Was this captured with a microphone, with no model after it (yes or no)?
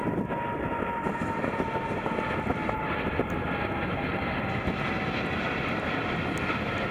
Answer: yes